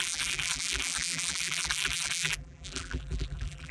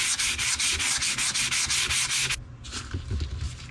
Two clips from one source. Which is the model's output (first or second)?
first